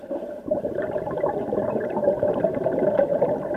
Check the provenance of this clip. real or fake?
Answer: fake